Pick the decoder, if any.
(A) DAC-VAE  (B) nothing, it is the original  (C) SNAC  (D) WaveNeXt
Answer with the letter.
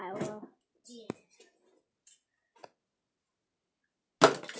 B